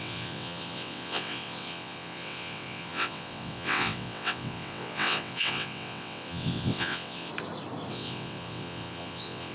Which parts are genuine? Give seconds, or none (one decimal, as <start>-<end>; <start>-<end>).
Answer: 7.3-7.9